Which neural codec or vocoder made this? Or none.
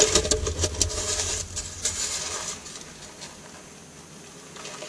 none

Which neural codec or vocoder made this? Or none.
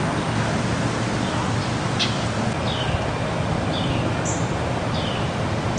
none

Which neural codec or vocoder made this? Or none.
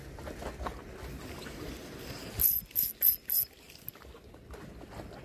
none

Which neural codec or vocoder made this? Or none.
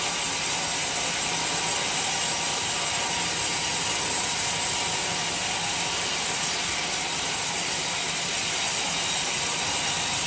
none